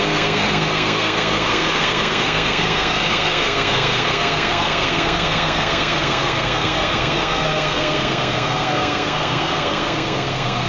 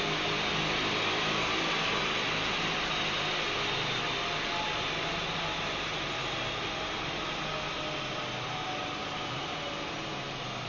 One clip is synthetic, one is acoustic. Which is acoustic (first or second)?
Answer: second